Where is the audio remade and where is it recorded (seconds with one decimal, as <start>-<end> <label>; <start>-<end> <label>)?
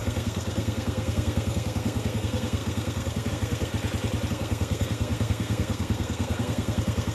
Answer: 0.0-3.7 remade; 3.7-4.3 recorded; 4.3-7.1 remade